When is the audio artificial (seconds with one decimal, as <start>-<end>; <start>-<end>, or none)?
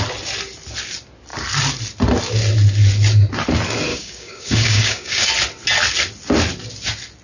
3.9-5.3